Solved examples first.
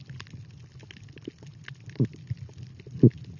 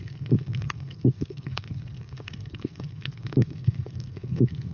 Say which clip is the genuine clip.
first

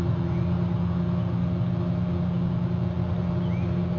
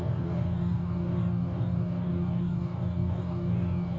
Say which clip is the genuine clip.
first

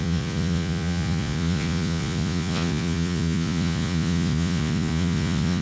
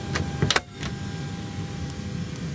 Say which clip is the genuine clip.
second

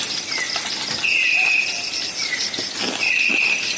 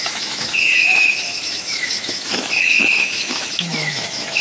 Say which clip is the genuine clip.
first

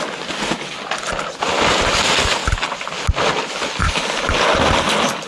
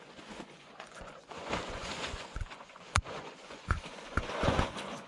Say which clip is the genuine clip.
first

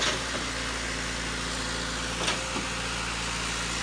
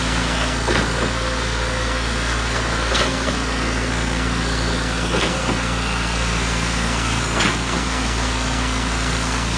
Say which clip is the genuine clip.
first